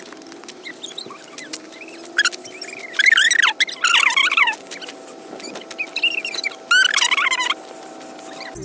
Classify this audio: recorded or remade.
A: recorded